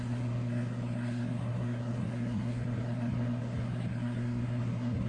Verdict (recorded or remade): remade